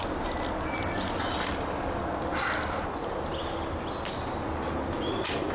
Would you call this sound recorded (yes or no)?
yes